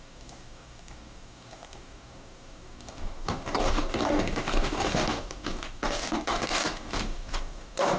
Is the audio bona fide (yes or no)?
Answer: no